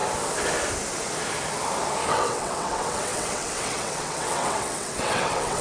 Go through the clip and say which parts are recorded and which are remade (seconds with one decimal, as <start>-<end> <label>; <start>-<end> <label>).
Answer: 0.0-2.1 recorded; 2.1-5.6 remade